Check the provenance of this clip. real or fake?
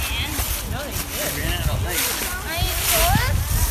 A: real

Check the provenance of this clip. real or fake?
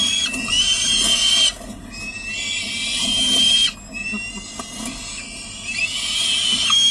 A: real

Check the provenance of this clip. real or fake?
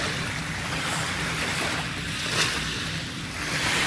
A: real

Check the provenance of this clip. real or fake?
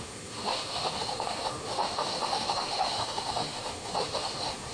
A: fake